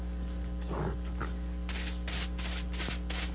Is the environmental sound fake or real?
real